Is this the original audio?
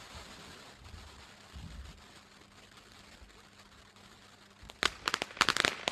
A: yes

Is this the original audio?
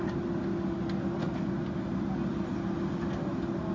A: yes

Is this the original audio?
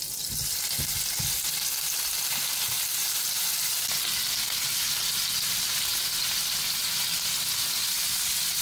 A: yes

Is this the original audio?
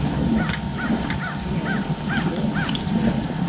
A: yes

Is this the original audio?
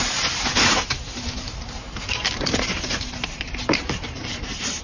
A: no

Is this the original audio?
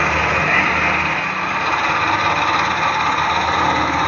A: yes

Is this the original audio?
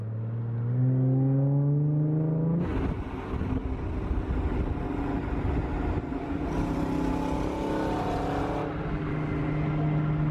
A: yes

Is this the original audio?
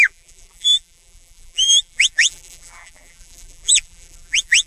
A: no